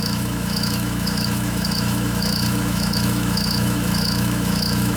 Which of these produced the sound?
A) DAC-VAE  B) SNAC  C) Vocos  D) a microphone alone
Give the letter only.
A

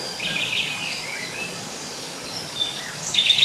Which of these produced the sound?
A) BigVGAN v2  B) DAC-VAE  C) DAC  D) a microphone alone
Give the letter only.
C